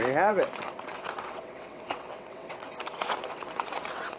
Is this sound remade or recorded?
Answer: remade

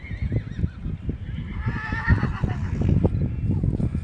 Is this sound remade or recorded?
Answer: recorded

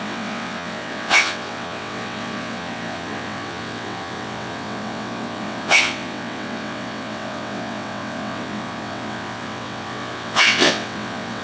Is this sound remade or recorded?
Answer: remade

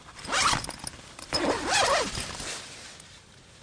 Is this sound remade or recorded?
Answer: recorded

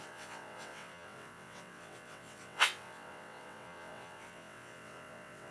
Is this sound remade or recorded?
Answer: remade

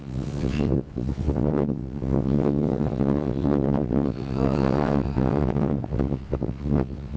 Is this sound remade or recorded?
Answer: remade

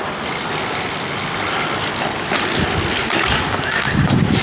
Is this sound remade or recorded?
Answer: recorded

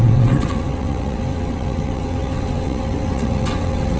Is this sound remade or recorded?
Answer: remade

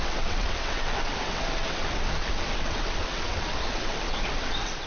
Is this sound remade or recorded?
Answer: remade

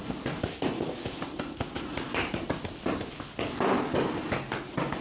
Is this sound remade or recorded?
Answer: recorded